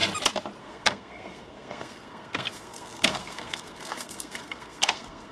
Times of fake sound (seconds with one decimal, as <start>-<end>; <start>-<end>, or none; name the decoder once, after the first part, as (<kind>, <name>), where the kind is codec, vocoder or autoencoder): 0.6-5.3 (codec, SNAC)